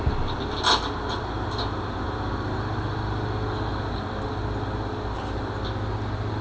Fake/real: real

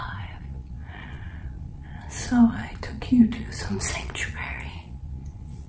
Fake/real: fake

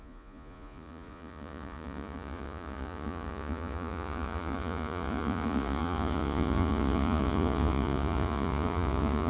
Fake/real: fake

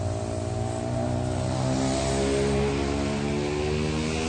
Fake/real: real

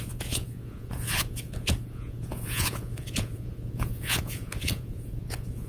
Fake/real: fake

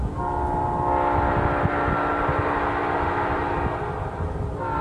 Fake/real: real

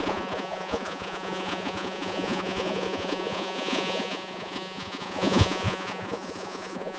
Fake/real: fake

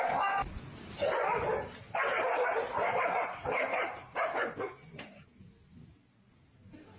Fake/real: real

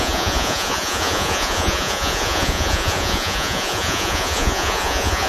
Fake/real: fake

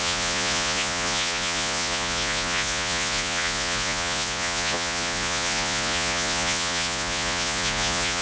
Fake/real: fake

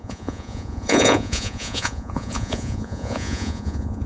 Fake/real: fake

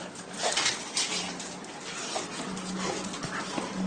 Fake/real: real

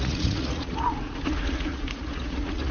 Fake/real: fake